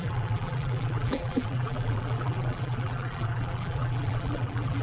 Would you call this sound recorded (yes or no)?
no